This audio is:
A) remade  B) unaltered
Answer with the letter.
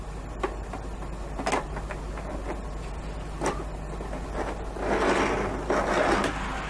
B